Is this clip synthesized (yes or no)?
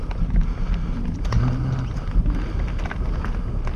no